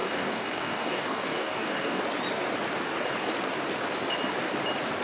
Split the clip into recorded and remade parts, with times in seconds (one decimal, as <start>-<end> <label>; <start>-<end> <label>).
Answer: 0.0-2.0 remade; 2.0-5.0 recorded